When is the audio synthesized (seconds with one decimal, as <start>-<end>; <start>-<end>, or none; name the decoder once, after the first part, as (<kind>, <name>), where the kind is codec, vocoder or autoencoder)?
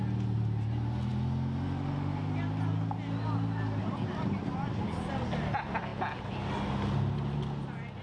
none